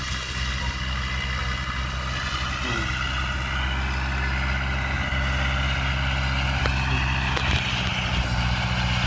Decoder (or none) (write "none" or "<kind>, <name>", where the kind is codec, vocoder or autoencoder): none